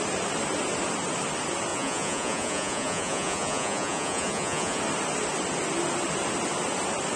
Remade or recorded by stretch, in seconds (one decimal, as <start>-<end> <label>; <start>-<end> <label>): 0.0-1.7 recorded; 1.7-4.8 remade; 4.8-7.2 recorded